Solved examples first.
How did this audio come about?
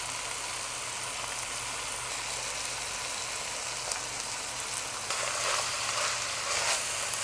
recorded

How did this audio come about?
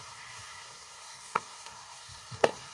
remade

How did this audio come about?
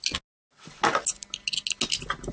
recorded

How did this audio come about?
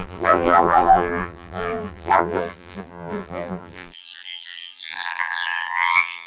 remade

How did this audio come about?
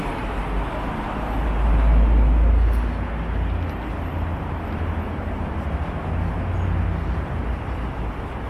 recorded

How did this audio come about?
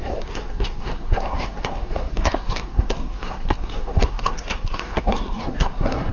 remade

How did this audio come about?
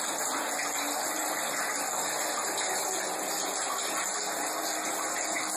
recorded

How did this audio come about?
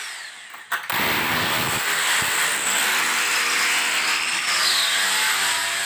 recorded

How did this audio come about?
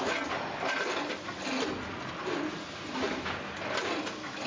recorded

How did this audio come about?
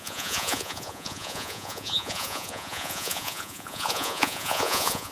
remade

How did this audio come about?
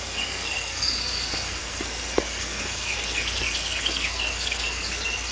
remade